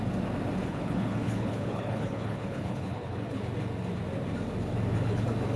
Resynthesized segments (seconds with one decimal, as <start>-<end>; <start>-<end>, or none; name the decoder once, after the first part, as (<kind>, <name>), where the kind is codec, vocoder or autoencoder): 0.6-3.4 (codec, HILCodec)